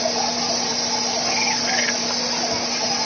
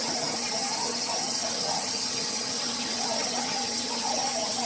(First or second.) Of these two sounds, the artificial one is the second